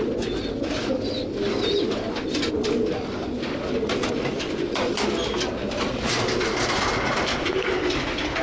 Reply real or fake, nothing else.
real